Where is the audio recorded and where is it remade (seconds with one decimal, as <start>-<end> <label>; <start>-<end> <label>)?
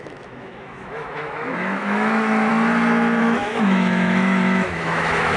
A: 0.0-2.5 remade; 2.5-3.2 recorded; 3.2-5.4 remade